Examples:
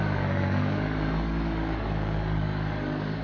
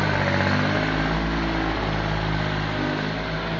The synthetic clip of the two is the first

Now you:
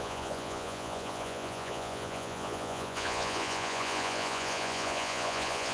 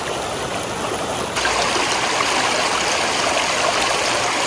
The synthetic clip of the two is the first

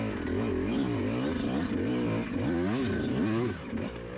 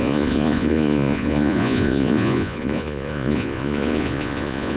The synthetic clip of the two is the second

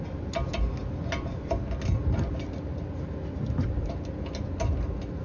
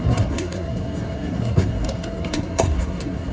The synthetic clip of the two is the second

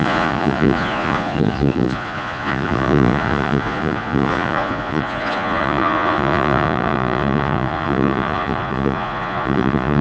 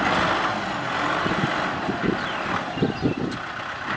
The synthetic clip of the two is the first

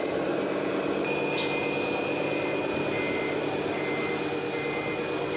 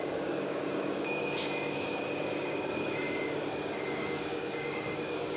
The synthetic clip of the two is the second